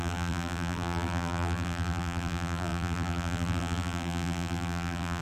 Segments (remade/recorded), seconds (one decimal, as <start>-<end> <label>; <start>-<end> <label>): 0.0-5.2 remade